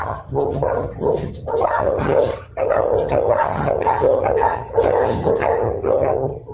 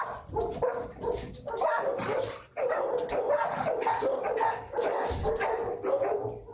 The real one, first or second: second